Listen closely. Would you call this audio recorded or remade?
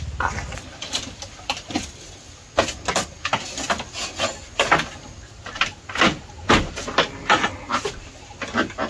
recorded